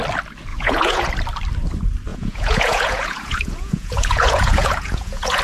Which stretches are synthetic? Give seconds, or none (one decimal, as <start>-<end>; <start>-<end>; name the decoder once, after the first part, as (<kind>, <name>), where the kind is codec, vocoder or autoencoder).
0.5-1.1 (vocoder, Vocos); 2.1-5.4